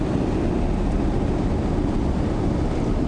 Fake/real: real